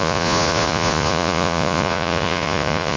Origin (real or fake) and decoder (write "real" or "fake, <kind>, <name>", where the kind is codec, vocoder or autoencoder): fake, vocoder, Vocos